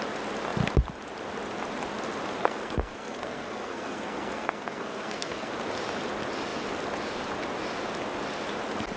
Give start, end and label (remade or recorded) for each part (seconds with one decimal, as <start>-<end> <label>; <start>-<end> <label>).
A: 0.0-2.4 recorded; 2.4-5.5 remade; 5.5-9.0 recorded